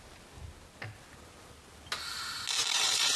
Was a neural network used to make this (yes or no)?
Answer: no